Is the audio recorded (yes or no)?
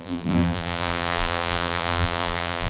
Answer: no